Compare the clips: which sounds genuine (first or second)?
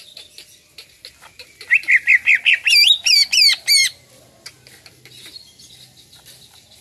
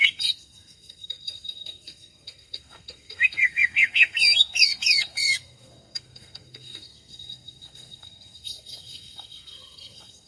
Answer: first